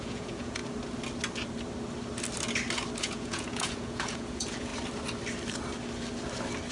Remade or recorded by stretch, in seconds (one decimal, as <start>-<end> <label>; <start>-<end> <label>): 0.0-0.6 remade; 0.6-3.0 recorded; 3.0-4.7 remade; 4.7-6.7 recorded